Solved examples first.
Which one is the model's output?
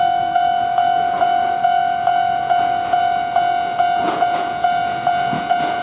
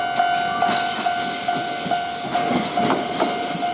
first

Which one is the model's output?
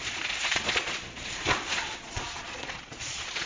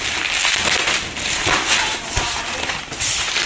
first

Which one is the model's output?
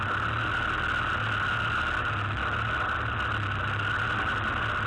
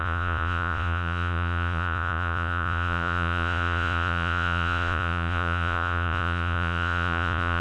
second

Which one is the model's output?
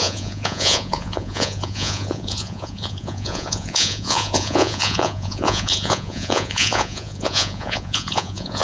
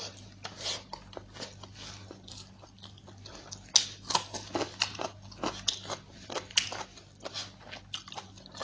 first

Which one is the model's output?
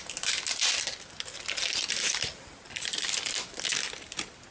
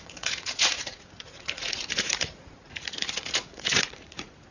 second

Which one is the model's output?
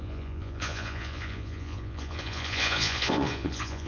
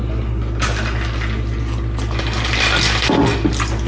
first